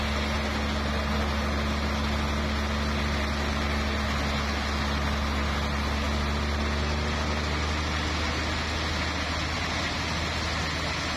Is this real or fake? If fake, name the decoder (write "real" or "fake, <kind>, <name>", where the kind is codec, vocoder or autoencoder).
real